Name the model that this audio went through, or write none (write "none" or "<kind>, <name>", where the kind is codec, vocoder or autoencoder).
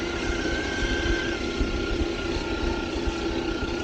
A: none